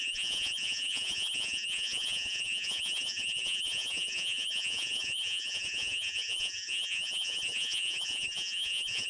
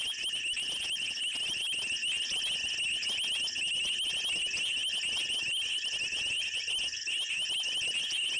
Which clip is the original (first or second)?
second